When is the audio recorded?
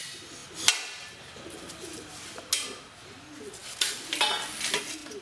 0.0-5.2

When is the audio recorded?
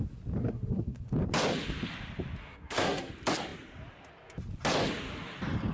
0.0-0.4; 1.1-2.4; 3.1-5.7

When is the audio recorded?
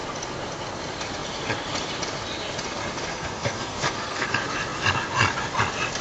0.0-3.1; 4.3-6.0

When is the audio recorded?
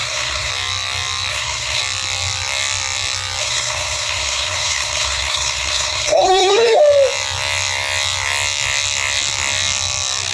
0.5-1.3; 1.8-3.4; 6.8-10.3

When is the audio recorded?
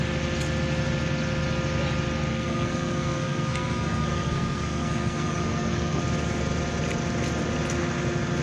0.0-2.3; 6.0-8.4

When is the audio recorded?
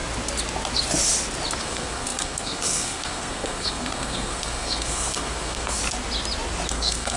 0.0-1.6; 5.8-6.7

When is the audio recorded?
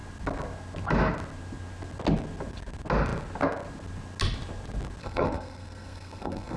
0.0-5.0